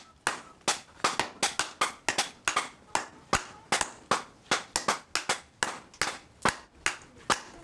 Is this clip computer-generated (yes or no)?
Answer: no